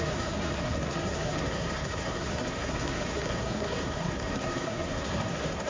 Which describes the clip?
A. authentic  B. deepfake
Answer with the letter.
B